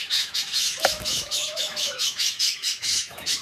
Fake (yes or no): yes